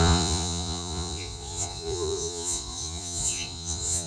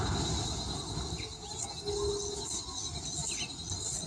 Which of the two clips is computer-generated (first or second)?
first